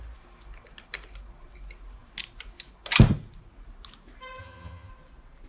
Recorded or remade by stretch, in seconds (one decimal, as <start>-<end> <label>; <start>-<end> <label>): 0.0-4.4 recorded; 4.4-4.9 remade; 4.9-5.5 recorded